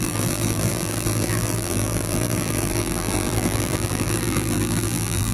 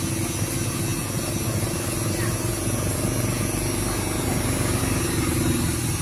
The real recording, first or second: second